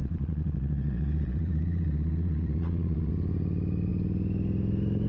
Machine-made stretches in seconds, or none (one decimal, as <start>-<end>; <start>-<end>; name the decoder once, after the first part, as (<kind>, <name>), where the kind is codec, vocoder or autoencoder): 0.0-3.1 (vocoder, Vocos)